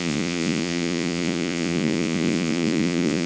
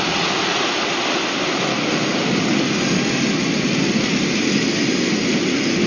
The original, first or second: second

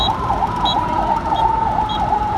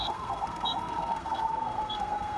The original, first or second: first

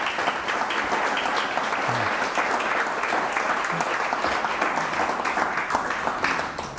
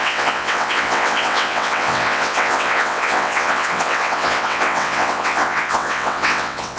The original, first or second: first